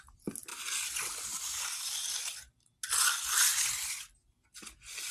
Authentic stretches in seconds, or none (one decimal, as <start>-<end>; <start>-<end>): 0.0-5.1